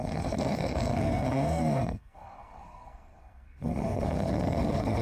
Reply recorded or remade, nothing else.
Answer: remade